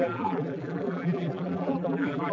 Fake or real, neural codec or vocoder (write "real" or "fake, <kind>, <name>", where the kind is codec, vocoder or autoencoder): fake, vocoder, BigVGAN v2